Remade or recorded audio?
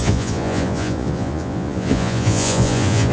remade